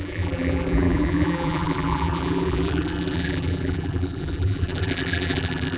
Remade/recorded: remade